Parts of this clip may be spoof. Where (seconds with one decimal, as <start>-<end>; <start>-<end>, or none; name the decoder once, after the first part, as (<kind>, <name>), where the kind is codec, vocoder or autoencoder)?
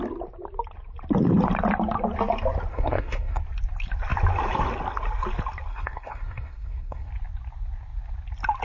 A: 2.7-3.4 (codec, SNAC); 5.7-7.1